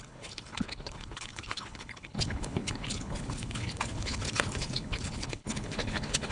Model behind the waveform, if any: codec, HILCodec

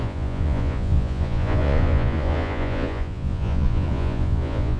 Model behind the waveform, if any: vocoder, Vocos